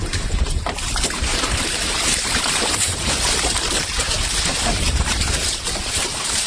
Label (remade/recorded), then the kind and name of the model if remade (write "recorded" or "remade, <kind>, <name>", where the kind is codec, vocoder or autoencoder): remade, vocoder, BigVGAN v2